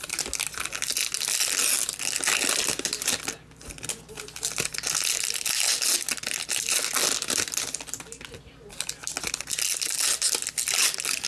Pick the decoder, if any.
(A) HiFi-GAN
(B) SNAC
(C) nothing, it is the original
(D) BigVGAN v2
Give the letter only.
C